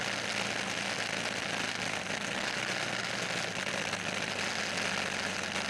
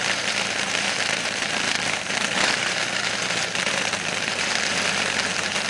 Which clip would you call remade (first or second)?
second